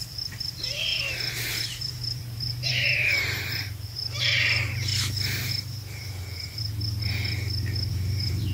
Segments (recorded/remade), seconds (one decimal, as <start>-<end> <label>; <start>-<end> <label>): 0.0-4.9 remade; 4.9-7.9 recorded; 7.9-8.5 remade